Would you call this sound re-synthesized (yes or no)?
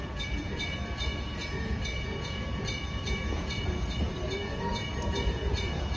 yes